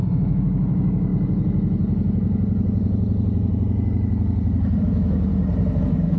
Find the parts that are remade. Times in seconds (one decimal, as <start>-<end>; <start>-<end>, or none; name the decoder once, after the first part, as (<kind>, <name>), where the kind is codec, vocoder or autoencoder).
0.0-1.1 (autoencoder, DAC-VAE); 4.8-5.3; 5.8-6.2